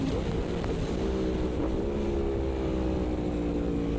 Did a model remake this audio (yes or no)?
no